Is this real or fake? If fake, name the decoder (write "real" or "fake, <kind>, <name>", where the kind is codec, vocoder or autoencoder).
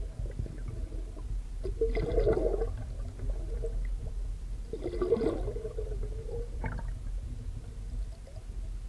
real